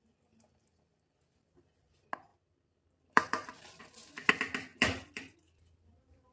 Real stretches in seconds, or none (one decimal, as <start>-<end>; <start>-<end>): 0.0-2.3; 3.8-4.7; 5.3-6.3

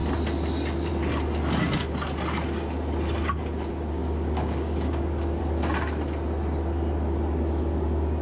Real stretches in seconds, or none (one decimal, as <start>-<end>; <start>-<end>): 0.0-3.7; 5.4-8.2